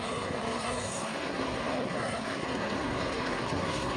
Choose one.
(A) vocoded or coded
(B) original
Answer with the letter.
A